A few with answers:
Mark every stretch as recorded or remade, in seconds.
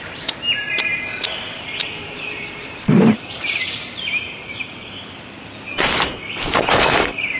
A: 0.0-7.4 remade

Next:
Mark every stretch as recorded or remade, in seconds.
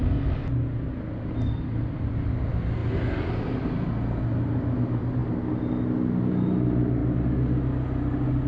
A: 0.0-8.5 recorded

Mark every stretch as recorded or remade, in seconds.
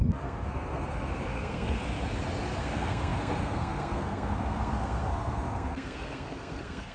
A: 0.0-1.8 remade; 1.8-2.6 recorded; 2.6-6.9 remade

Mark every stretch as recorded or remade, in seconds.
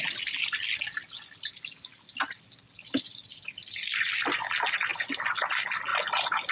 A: 0.0-6.5 recorded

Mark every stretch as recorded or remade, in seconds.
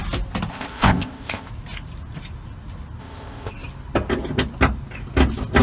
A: 0.0-0.5 recorded; 0.5-1.5 remade; 1.5-3.0 recorded; 3.0-3.5 remade; 3.5-5.6 recorded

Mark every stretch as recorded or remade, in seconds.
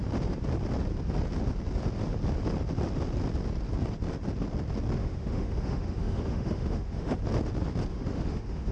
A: 0.0-5.0 recorded; 5.0-7.2 remade; 7.2-7.9 recorded; 7.9-8.7 remade